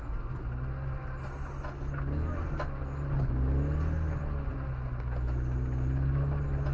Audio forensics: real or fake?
real